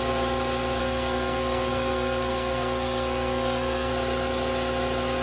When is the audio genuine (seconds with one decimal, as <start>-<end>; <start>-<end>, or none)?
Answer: 0.0-0.8; 3.9-5.2